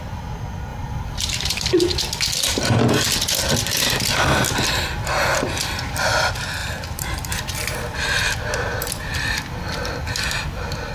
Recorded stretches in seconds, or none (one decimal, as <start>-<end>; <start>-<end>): 0.0-0.7; 1.6-6.6; 7.4-10.9